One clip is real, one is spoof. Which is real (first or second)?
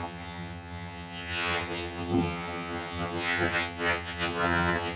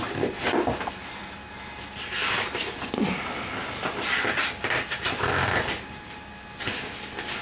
second